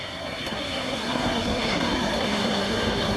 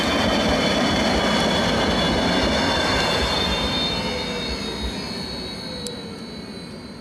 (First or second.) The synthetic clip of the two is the first